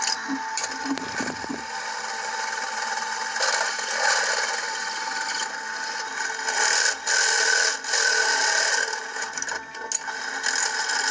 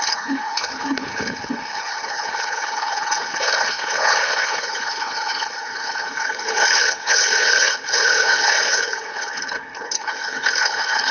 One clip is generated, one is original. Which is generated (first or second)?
second